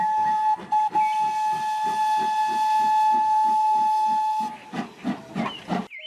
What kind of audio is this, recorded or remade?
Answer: recorded